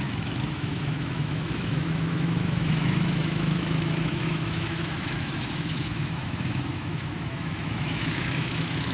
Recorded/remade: remade